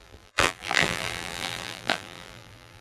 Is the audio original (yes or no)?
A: no